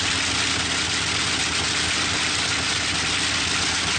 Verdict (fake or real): real